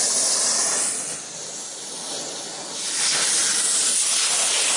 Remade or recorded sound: recorded